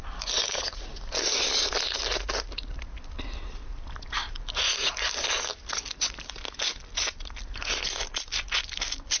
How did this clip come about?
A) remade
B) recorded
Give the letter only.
B